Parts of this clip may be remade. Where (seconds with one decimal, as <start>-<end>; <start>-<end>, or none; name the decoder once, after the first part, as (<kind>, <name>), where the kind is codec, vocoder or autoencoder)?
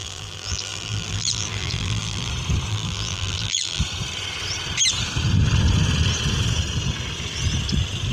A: 0.0-2.3 (vocoder, BigVGAN v2); 2.7-3.8